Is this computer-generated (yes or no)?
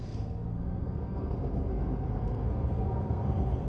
yes